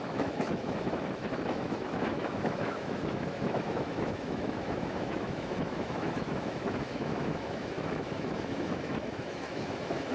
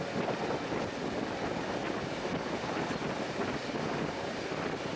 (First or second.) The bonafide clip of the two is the second